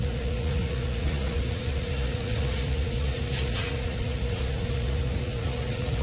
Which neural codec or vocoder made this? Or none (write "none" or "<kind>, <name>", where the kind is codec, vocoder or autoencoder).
vocoder, Vocos